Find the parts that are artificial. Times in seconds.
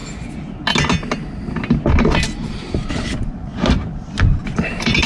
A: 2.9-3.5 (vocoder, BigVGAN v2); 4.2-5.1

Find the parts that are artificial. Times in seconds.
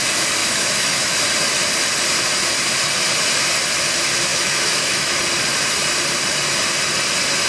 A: 0.4-1.1 (autoencoder, DAC-VAE); 4.3-5.2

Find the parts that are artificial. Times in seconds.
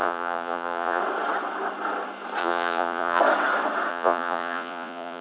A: 0.0-1.0 (vocoder, Vocos); 2.4-3.2; 3.9-5.2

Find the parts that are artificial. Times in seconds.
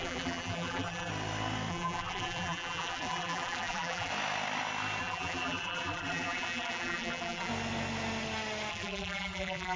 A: 0.0-1.1 (vocoder, BigVGAN v2); 1.7-4.1; 5.0-7.5; 8.7-9.8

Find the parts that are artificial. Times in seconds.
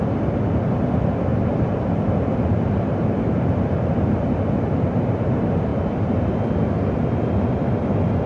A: 1.3-4.4 (vocoder, BigVGAN v2)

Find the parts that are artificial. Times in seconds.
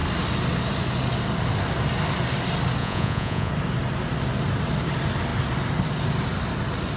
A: 2.8-3.5 (vocoder, Vocos)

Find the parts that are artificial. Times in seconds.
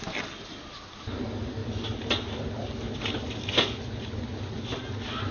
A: none